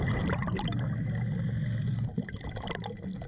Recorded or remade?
recorded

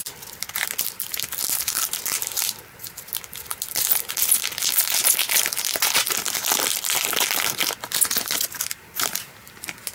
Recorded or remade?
recorded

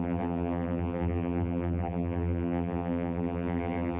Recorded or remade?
remade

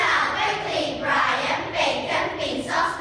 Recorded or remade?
recorded